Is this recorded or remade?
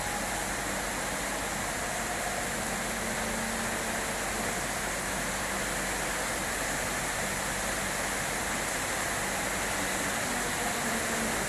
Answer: recorded